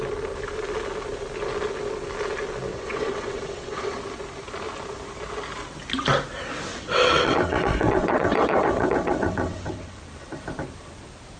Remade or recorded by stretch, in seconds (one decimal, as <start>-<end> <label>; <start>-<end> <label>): 0.0-2.7 recorded; 2.7-3.9 remade; 3.9-6.7 recorded; 6.7-10.0 remade; 10.0-11.4 recorded